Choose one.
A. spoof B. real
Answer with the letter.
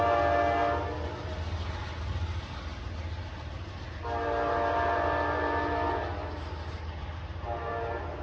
B